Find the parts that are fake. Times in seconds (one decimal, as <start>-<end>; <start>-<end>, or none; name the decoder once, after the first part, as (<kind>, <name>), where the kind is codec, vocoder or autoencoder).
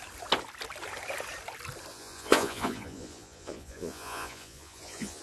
1.9-5.2 (vocoder, Vocos)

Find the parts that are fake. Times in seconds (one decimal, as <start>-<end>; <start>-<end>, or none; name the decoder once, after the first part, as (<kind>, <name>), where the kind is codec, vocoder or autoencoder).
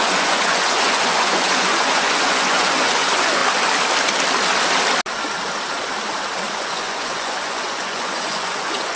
0.0-3.4 (vocoder, Vocos); 6.5-9.0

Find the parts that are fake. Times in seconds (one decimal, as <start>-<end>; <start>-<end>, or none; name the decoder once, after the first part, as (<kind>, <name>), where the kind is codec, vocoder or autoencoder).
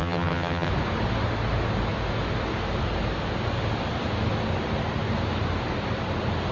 0.0-0.7 (vocoder, HiFi-GAN)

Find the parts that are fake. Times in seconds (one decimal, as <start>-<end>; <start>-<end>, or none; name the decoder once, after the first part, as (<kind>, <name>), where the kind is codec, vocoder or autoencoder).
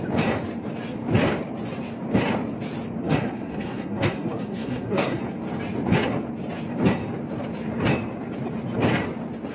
3.0-5.2 (codec, SNAC)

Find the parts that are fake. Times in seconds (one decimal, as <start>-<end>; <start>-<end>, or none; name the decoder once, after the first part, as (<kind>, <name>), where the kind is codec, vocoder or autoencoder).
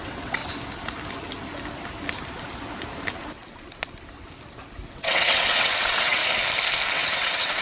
0.0-0.4 (vocoder, WaveNeXt); 4.9-6.2; 6.9-7.6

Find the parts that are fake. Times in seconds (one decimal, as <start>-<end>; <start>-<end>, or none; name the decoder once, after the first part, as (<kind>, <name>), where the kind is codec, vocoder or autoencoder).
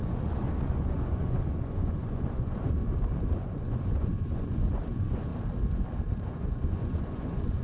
0.0-2.8 (vocoder, Vocos); 3.6-5.3; 6.3-7.6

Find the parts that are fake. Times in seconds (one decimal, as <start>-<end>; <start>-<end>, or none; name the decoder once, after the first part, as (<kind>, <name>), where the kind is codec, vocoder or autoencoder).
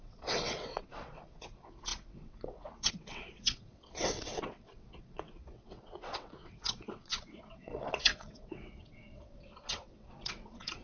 0.0-10.8 (vocoder, WaveNeXt)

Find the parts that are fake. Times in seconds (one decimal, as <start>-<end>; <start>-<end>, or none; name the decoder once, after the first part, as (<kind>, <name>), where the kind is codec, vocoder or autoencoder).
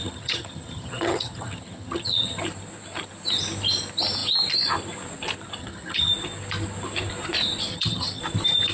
0.0-2.4 (vocoder, HiFi-GAN); 5.6-6.1; 7.7-8.2